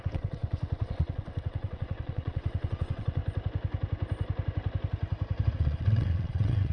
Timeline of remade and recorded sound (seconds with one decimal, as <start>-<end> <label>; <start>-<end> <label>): 0.0-3.2 remade; 3.2-5.6 recorded; 5.6-6.7 remade